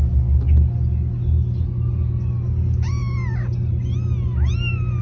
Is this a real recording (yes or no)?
yes